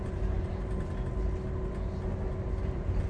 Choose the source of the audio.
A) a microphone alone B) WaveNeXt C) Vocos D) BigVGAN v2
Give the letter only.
A